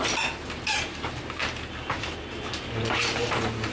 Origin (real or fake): real